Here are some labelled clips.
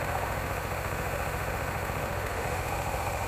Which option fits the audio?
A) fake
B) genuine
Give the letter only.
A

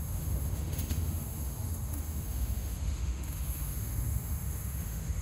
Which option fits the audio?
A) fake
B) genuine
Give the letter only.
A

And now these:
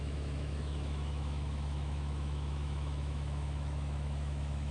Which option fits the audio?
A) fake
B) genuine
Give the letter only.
A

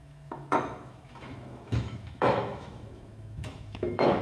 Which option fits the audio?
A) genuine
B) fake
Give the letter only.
B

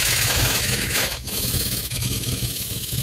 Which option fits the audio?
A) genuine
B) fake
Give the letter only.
B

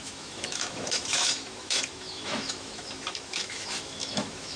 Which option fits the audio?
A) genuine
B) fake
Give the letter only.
B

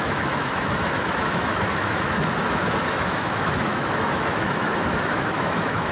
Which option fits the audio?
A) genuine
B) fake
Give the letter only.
B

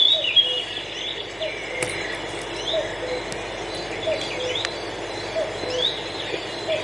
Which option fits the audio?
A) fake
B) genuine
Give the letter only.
B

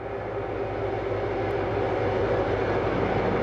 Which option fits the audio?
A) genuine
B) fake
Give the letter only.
A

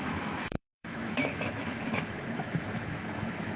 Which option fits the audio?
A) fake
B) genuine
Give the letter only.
A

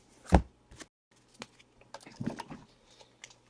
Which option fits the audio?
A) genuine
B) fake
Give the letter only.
A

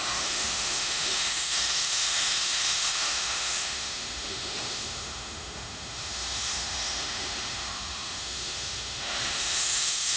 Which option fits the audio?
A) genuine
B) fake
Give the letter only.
B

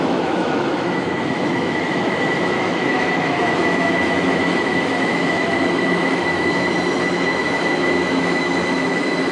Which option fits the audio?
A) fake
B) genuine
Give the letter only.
A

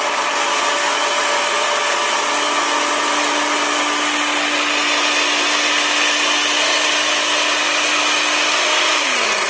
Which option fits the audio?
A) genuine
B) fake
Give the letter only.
A